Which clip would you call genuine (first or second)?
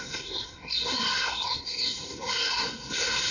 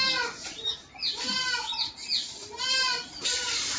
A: second